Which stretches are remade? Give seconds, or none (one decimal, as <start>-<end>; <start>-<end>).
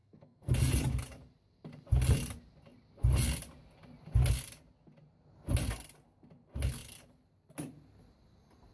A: 0.0-0.5